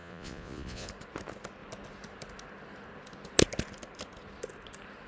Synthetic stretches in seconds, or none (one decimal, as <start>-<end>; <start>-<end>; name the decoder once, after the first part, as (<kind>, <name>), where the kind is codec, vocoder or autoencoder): 0.0-0.9 (vocoder, Vocos)